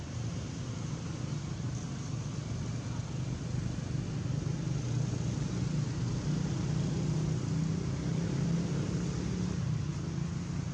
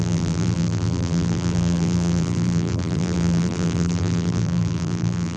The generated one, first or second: second